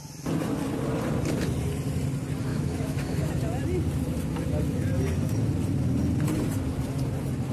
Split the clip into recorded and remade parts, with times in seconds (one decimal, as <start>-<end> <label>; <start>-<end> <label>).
0.0-2.5 recorded; 2.5-3.3 remade; 3.3-7.5 recorded